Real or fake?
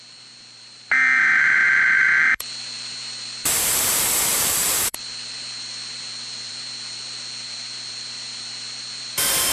fake